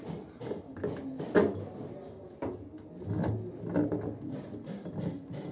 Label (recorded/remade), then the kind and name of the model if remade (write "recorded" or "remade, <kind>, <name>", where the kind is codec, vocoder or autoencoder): recorded